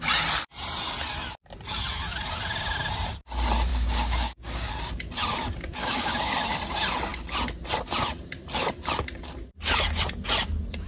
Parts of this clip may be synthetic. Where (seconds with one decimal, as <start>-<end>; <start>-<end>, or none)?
3.7-4.7; 5.8-6.4